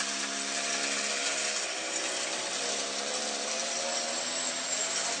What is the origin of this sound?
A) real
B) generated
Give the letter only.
A